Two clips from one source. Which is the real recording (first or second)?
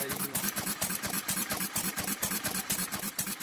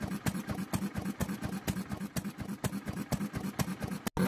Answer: second